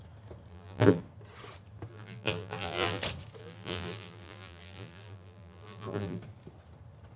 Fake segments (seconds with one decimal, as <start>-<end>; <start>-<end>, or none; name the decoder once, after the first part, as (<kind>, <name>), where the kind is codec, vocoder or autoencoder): 0.5-1.0 (vocoder, BigVGAN v2); 1.9-3.0; 3.4-6.2